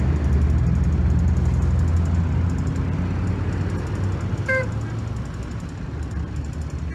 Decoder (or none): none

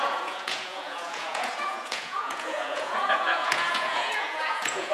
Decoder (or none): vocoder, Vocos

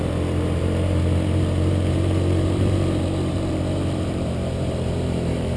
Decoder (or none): vocoder, BigVGAN v2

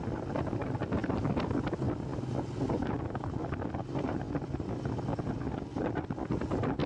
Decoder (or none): none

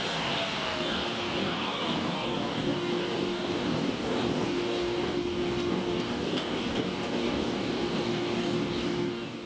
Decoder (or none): codec, DAC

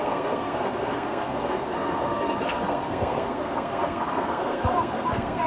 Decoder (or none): codec, SNAC